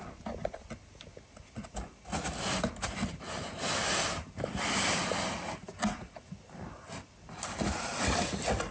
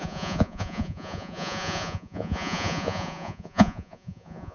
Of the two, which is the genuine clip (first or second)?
first